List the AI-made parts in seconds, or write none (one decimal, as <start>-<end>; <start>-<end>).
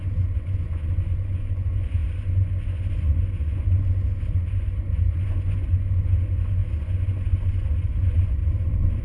0.0-8.4